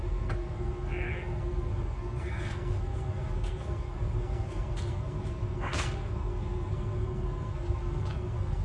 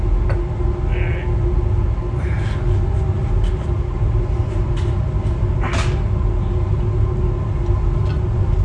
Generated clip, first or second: first